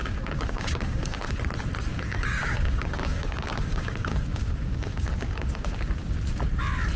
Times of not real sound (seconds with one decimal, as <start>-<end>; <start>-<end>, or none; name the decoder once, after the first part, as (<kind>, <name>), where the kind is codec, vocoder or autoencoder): 0.0-1.3 (codec, DAC); 1.9-6.1